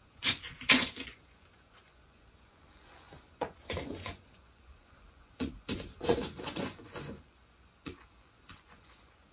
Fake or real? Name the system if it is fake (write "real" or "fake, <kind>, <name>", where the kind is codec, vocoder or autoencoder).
fake, vocoder, Vocos